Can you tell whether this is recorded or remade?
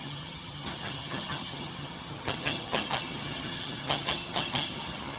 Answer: remade